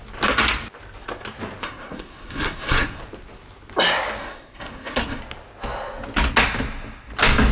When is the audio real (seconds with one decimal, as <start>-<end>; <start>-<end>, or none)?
0.0-1.6; 3.0-4.2; 5.2-7.5